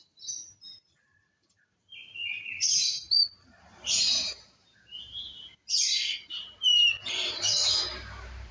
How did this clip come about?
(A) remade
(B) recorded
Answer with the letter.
A